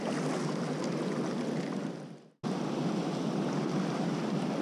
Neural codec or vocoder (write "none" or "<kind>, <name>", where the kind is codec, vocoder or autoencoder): none